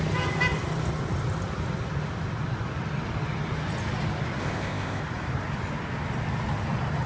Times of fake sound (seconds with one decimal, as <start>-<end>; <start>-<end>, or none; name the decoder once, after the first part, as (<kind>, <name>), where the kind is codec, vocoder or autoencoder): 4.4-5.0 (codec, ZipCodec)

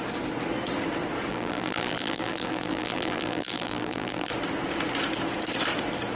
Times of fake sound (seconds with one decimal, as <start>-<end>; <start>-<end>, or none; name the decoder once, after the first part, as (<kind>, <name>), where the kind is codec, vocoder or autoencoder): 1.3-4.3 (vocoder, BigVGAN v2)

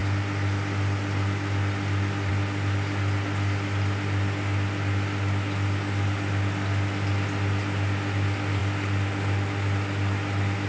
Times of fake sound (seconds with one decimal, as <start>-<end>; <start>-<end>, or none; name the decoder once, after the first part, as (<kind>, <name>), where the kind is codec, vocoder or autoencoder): none

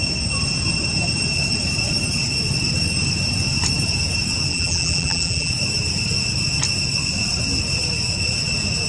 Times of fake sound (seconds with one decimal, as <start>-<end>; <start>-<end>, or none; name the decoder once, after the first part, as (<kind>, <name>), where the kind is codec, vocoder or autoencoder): 4.5-5.5 (vocoder, BigVGAN v2)